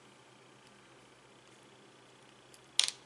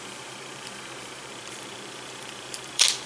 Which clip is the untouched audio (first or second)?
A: first